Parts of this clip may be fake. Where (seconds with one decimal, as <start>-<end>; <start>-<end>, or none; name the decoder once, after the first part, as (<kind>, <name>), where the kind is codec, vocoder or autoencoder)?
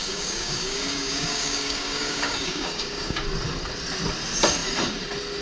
0.0-3.2 (codec, DAC)